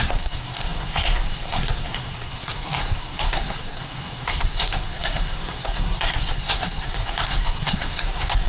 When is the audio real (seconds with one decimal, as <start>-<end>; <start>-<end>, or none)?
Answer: none